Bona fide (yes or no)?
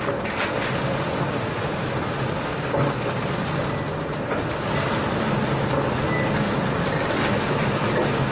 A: yes